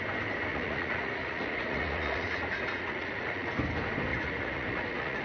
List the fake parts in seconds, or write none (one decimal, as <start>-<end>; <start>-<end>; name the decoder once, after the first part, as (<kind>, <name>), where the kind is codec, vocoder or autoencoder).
0.5-3.6 (vocoder, Vocos); 4.1-5.2